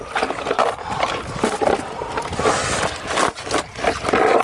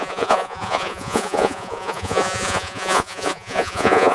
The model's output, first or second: second